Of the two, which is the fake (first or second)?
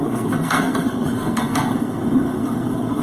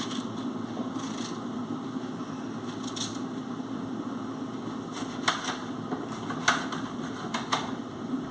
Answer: first